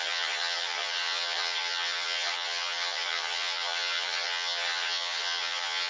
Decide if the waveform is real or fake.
fake